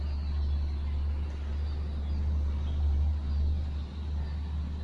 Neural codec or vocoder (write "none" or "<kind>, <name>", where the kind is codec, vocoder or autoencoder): none